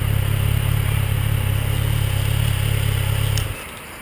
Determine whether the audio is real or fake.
real